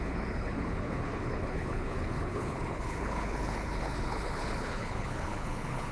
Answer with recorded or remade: remade